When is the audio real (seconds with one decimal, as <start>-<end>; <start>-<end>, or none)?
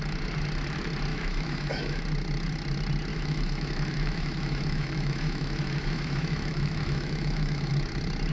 0.0-1.1; 2.0-3.1; 7.7-8.3